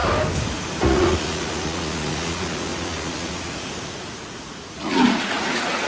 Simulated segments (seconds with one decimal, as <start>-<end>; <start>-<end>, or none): 0.8-5.9